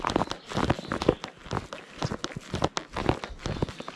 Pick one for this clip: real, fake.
real